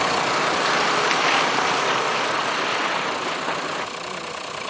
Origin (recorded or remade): remade